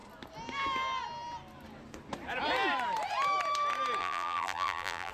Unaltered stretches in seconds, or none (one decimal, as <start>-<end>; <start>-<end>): 0.0-4.0